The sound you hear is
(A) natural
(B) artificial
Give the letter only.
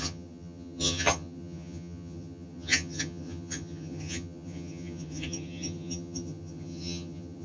B